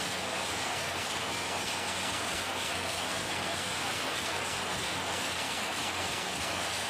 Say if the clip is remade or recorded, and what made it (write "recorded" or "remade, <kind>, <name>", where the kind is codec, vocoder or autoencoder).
remade, codec, SNAC